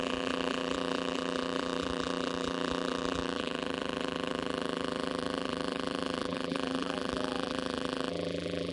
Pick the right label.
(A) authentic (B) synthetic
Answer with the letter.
B